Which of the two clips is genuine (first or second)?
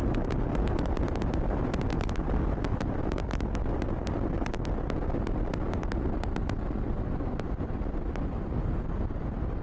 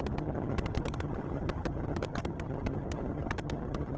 first